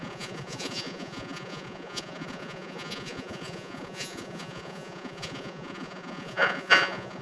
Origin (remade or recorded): remade